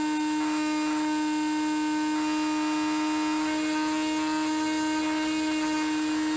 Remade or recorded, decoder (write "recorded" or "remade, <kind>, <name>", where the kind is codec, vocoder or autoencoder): recorded